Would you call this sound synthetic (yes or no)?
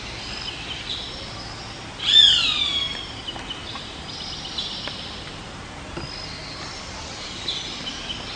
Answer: no